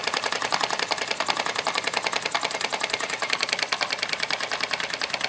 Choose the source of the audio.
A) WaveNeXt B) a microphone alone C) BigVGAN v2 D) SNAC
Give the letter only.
B